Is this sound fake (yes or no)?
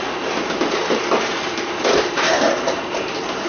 yes